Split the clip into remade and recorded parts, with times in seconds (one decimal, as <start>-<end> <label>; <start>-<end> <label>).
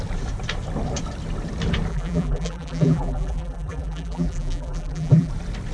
0.0-1.9 recorded; 1.9-5.3 remade; 5.3-5.7 recorded